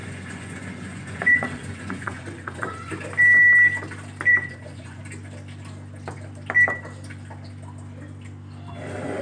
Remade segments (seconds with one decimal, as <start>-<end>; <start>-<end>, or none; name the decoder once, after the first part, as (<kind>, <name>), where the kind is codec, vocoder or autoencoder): 0.0-2.9 (vocoder, Vocos); 4.3-5.0